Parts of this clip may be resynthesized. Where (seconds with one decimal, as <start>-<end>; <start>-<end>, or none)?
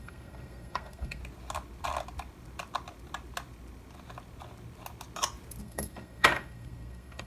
0.0-1.2; 5.6-7.3